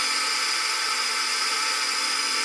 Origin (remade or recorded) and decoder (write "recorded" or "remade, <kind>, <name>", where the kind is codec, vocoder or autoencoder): recorded